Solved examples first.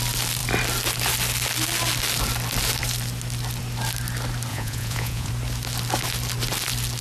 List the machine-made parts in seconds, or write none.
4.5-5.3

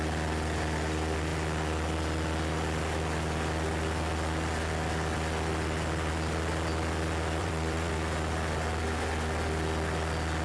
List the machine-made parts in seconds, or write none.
7.4-7.9

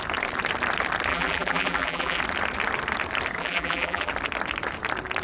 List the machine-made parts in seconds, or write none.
1.1-2.2; 3.4-4.1

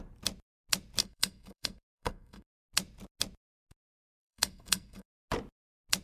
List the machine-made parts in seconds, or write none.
1.0-2.5; 3.8-5.1

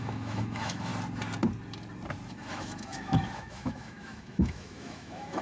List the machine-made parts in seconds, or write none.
0.0-0.9; 2.3-5.4

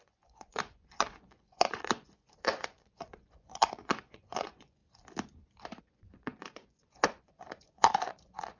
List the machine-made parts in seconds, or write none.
0.0-4.8; 5.8-8.6

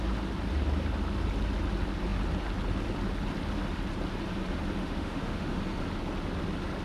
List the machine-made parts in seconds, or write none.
4.8-5.6

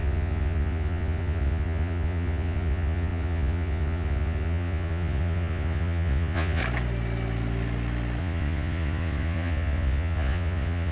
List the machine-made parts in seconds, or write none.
0.0-6.6; 8.2-10.9